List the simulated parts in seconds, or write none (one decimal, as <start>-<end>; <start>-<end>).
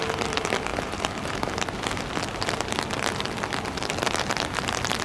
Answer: 0.7-1.5